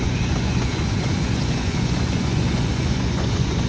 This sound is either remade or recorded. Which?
remade